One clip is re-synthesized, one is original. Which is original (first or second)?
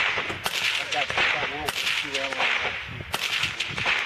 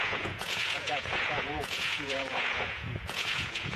first